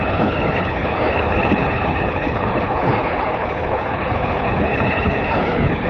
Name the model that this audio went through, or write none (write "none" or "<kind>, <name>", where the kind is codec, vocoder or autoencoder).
codec, HILCodec